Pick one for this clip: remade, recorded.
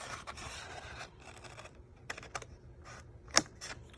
remade